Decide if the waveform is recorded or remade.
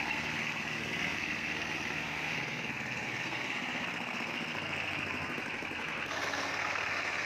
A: remade